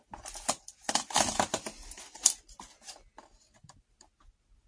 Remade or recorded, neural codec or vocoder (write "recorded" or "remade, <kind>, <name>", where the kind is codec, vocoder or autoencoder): recorded